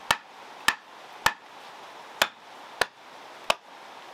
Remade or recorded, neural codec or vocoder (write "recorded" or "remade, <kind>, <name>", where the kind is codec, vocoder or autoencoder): recorded